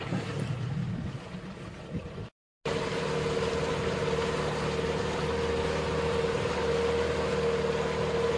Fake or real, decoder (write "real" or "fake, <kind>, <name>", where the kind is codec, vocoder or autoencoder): real